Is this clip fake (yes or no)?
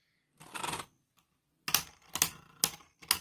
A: no